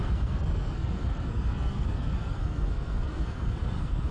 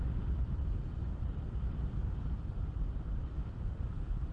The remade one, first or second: first